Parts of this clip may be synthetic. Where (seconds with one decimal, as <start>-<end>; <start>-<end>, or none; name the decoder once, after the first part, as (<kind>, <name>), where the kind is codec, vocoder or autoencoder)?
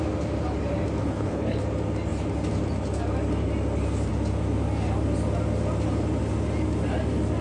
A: 1.0-1.6 (codec, HILCodec)